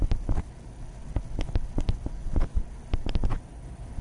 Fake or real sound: real